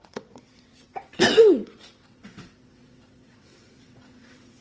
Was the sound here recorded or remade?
remade